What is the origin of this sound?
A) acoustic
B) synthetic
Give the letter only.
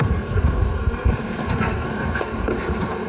B